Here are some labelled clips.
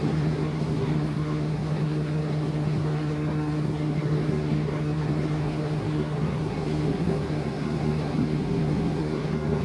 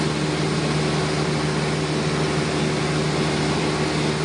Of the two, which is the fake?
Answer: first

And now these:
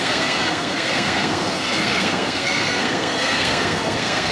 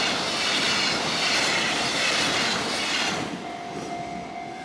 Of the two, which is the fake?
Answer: first